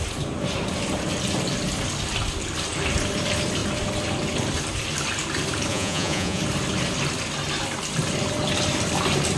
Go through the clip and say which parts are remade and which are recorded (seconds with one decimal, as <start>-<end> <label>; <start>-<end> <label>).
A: 0.0-5.7 recorded; 5.7-6.4 remade; 6.4-9.4 recorded